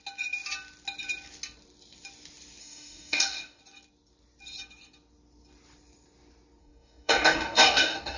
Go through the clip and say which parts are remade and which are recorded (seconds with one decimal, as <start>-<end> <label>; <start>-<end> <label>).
0.0-2.6 recorded; 2.6-3.6 remade; 3.6-6.6 recorded; 6.6-8.2 remade